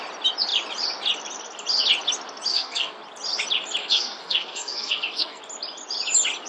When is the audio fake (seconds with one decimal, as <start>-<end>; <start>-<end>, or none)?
2.5-3.0; 3.8-5.4